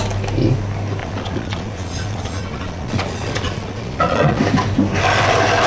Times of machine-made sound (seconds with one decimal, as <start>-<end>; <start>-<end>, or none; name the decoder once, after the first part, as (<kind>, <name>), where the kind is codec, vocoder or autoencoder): 1.0-4.4 (vocoder, Vocos)